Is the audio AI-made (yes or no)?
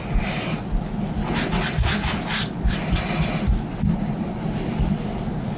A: no